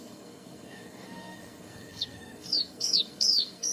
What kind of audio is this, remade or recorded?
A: remade